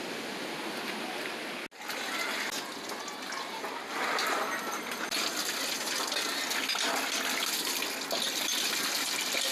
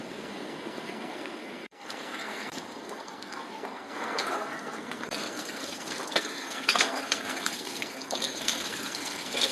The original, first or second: first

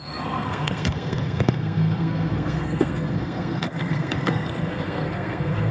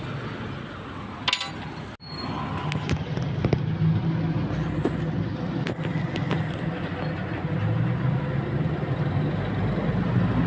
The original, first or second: second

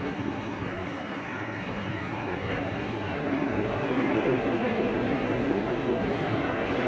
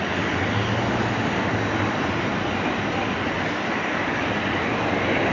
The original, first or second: second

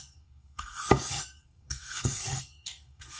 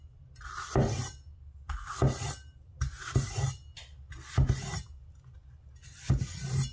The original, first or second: second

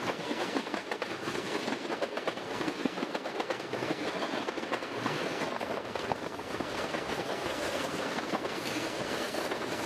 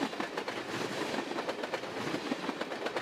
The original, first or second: second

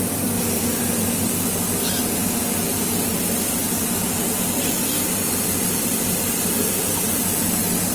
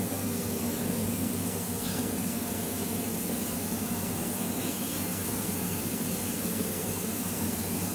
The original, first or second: first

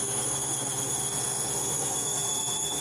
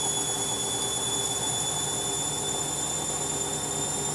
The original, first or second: second